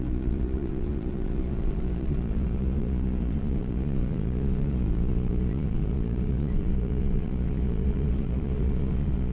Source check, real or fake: fake